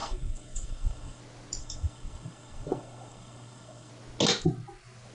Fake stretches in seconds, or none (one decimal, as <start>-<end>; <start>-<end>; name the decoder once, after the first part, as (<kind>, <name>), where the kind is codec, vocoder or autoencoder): 0.0-1.2 (codec, SNAC); 1.6-3.9